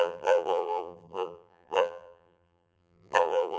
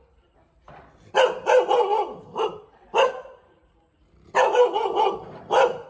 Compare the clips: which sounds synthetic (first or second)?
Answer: first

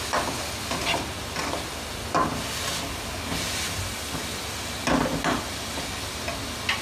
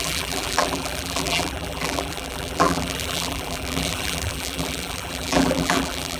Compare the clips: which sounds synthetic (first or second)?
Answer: second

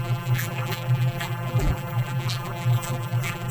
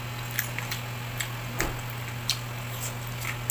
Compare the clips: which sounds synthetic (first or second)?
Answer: first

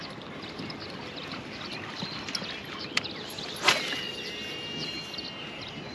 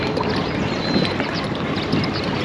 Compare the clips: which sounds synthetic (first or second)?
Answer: first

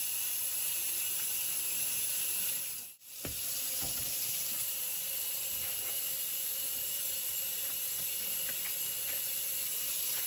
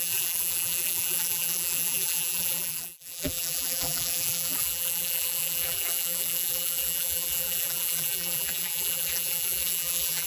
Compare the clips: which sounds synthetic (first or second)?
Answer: second